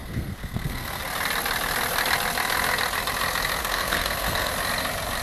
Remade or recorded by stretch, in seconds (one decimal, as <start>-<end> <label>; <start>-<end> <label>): 0.0-1.0 remade; 1.0-3.6 recorded; 3.6-4.5 remade; 4.5-5.2 recorded